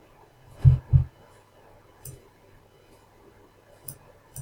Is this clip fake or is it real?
real